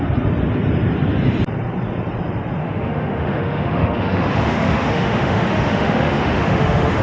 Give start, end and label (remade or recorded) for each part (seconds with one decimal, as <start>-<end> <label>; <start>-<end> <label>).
0.0-2.6 recorded; 2.6-7.0 remade